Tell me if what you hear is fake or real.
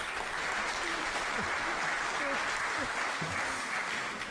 real